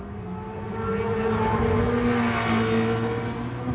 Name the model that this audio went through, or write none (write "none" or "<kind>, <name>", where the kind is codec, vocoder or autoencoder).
none